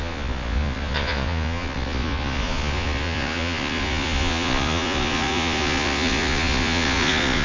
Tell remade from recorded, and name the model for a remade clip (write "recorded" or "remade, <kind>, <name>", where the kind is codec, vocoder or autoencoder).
remade, vocoder, Vocos